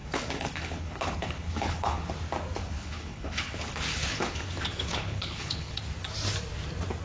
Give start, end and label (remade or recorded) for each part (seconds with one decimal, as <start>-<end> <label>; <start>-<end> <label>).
0.0-2.1 remade; 2.1-2.6 recorded; 2.6-5.8 remade; 5.8-7.0 recorded